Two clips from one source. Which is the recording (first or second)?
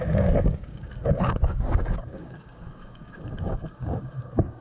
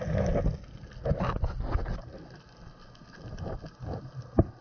second